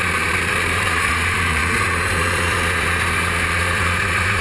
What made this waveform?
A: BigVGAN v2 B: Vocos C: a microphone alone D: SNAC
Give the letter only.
B